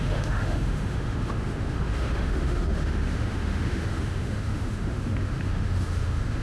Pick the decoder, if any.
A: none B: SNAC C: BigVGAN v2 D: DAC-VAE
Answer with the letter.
D